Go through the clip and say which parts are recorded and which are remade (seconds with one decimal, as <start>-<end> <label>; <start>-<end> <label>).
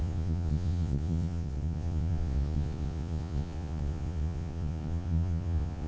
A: 0.0-5.9 remade